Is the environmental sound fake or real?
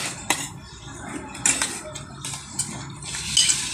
real